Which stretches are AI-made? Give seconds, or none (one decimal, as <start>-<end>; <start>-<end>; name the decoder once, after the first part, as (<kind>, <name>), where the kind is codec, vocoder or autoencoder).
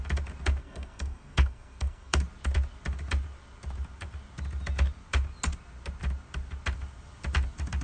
0.6-2.2 (codec, SNAC)